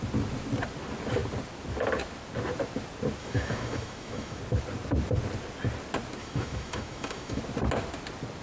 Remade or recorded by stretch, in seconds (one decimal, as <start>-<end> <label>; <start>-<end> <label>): 0.0-3.2 recorded; 3.2-4.4 remade; 4.4-6.2 recorded; 6.2-7.4 remade; 7.4-8.4 recorded